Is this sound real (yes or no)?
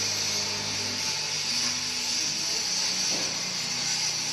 yes